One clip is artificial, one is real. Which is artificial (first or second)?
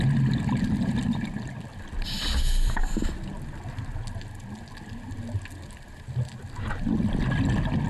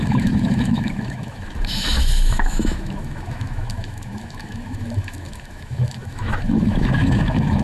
second